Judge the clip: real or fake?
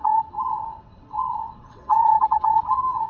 fake